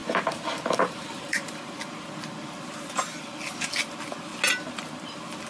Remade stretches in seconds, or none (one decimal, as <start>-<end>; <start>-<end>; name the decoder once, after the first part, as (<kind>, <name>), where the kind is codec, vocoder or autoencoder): 0.0-1.8 (vocoder, BigVGAN v2)